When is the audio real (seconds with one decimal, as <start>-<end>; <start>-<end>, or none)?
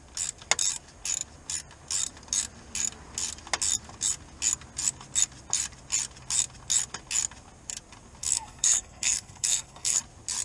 0.0-8.2; 10.0-10.4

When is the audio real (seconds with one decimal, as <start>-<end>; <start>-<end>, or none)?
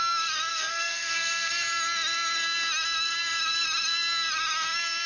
0.0-0.5; 1.5-5.1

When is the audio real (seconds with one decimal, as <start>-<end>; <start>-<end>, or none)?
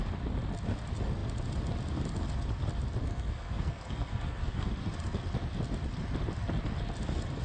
0.0-3.0; 4.7-7.4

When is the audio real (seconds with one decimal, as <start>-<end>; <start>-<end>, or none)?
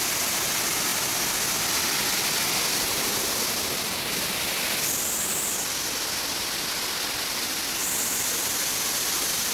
0.0-9.5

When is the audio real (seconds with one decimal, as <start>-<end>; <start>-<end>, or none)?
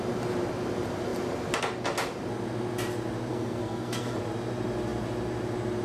0.0-3.3; 4.2-5.8